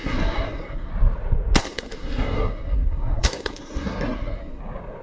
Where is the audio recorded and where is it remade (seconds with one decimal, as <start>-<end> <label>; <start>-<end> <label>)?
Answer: 0.0-0.9 remade; 0.9-1.6 recorded; 1.6-4.6 remade; 4.6-5.0 recorded